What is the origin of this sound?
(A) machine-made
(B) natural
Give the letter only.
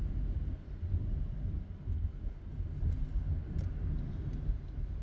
B